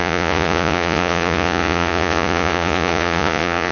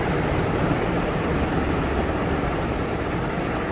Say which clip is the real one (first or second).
second